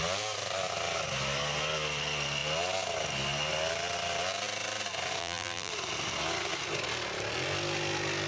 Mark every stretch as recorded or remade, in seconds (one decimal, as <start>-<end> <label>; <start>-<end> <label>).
0.0-5.2 recorded; 5.2-5.7 remade; 5.7-8.3 recorded